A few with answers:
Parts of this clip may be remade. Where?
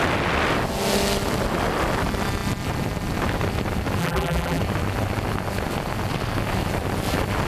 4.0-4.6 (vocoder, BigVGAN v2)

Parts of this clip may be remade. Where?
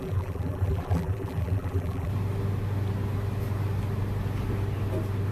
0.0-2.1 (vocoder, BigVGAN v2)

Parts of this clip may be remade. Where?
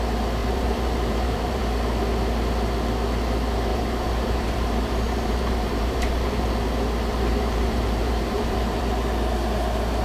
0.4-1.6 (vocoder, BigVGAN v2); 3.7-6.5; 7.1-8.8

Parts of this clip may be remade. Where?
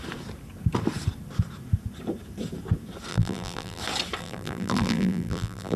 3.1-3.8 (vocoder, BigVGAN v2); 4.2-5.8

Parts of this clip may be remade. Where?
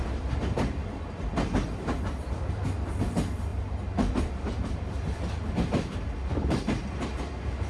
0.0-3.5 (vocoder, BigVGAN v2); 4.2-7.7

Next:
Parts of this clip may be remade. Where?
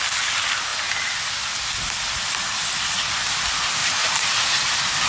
3.8-4.3 (vocoder, BigVGAN v2)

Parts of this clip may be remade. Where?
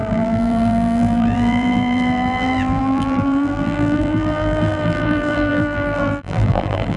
0.0-7.0 (vocoder, BigVGAN v2)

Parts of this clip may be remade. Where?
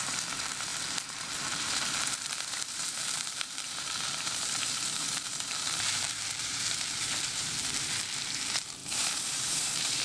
0.0-10.0 (vocoder, BigVGAN v2)